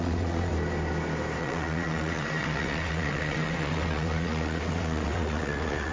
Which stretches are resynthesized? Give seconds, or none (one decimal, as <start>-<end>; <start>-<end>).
0.0-0.5; 1.4-5.9